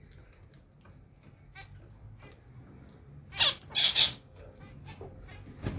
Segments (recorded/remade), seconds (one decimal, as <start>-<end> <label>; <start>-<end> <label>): 0.0-3.8 recorded; 3.8-4.6 remade; 4.6-5.8 recorded